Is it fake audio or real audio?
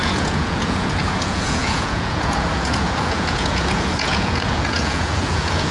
fake